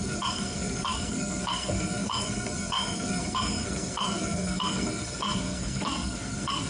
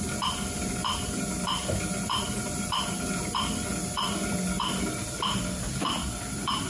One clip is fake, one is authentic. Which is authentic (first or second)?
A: second